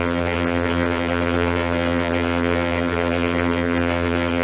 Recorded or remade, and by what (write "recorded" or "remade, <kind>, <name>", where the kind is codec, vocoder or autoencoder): remade, vocoder, BigVGAN v2